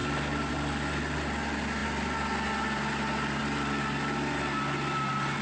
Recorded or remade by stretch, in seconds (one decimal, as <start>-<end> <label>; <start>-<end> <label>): 0.0-5.4 recorded